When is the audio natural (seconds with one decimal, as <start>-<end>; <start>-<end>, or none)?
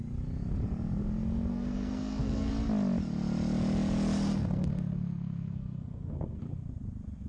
0.0-1.5; 2.5-4.3; 6.4-7.3